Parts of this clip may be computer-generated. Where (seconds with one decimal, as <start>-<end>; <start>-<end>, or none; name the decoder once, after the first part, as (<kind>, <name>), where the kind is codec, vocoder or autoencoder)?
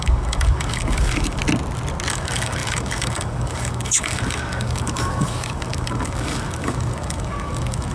0.0-1.4 (codec, DAC); 2.1-7.9